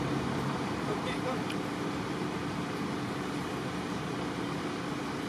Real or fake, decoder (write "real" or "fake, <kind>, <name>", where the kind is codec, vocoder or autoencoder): fake, vocoder, BigVGAN v2